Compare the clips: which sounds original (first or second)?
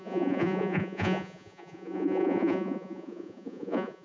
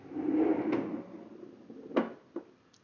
second